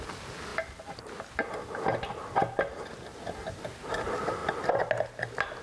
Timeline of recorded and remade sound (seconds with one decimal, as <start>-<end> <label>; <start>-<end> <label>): 0.0-5.6 recorded